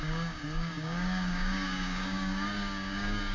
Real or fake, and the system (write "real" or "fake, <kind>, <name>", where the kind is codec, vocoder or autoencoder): fake, codec, DAC